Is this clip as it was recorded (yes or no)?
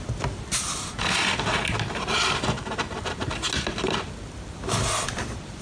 yes